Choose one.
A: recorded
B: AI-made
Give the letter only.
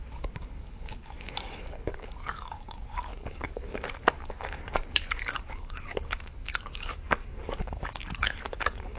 B